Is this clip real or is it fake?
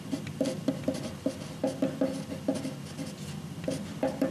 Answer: real